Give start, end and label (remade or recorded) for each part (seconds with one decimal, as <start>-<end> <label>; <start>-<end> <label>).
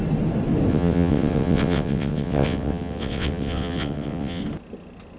0.0-0.7 recorded; 0.7-4.4 remade; 4.4-5.2 recorded